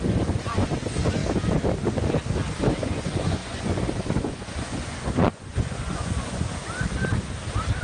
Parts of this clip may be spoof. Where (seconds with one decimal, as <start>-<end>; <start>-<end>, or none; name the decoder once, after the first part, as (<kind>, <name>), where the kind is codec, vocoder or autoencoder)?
0.0-1.2 (vocoder, Vocos); 2.6-6.6